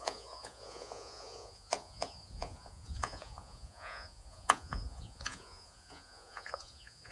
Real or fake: fake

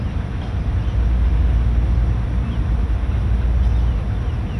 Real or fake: real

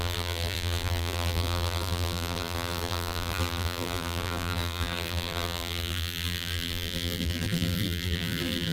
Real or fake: fake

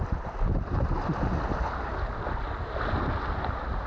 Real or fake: real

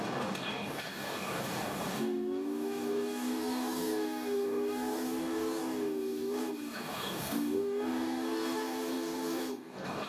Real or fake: fake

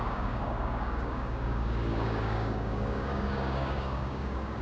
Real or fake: fake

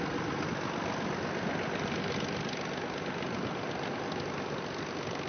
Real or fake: real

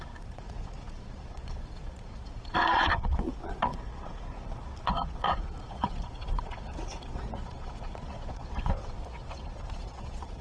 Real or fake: fake